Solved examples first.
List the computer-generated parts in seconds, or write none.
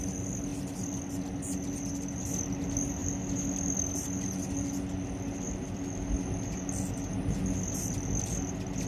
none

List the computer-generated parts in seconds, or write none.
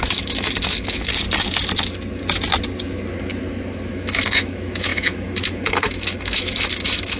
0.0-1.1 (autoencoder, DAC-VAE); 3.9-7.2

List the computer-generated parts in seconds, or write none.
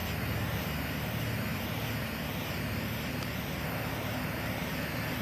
none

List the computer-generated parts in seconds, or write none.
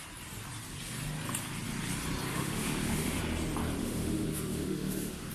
2.3-3.2 (autoencoder, DAC-VAE); 3.8-5.3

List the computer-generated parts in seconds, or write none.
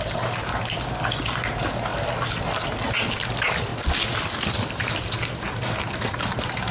none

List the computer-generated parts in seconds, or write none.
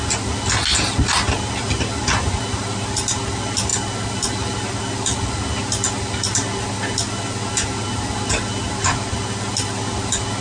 none